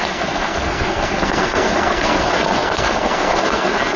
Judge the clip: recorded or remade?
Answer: remade